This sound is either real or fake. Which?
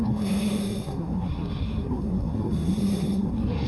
fake